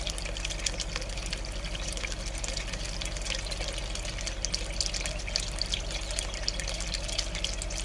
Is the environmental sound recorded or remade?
recorded